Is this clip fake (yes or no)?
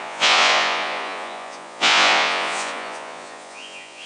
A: yes